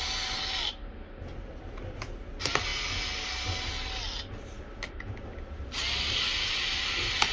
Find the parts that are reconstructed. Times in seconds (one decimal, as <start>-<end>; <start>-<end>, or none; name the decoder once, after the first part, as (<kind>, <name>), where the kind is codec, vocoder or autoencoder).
none